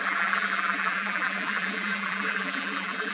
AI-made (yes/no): yes